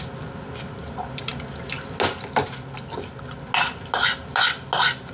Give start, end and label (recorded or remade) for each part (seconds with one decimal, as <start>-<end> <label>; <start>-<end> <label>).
0.0-5.1 recorded